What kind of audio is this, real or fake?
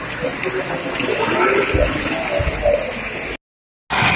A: real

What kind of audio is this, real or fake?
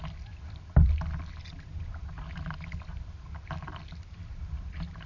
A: real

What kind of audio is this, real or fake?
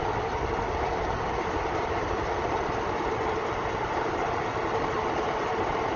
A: real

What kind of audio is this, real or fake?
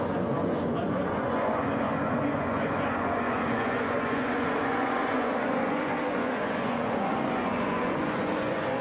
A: fake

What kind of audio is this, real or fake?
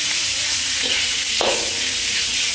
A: fake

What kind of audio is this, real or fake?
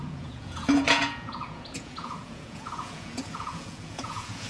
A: fake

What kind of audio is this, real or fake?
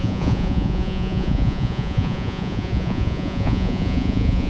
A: fake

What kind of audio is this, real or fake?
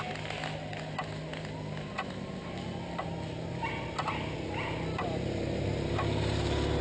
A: real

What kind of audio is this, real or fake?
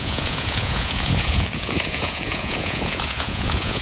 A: fake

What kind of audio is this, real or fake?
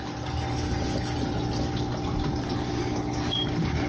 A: real